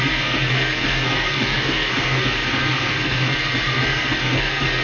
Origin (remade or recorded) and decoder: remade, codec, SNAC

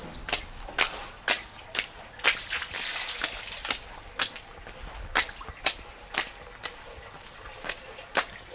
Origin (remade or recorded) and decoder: recorded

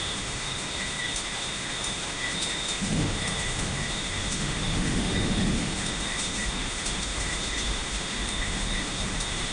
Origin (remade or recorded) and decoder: remade, autoencoder, DAC-VAE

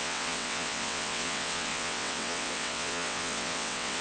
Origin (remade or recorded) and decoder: remade, vocoder, WaveNeXt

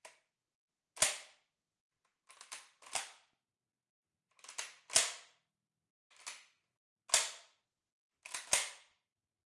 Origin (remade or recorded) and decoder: recorded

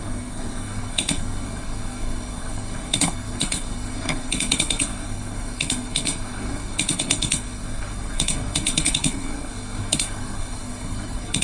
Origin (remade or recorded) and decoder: remade, codec, SNAC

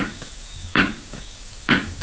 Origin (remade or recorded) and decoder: remade, codec, DAC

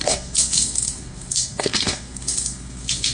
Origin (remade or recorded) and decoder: remade, codec, SNAC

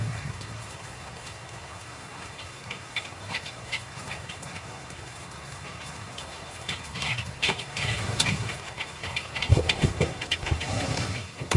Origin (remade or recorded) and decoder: remade, codec, SNAC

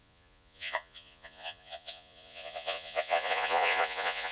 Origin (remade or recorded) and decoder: remade, vocoder, Vocos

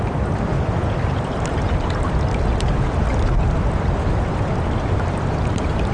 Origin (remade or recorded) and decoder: recorded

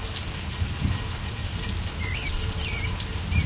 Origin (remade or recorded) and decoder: recorded